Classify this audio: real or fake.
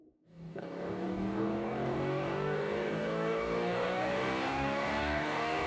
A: fake